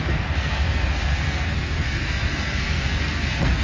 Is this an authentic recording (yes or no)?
no